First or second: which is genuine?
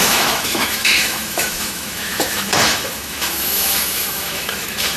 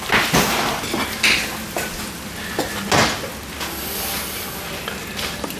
second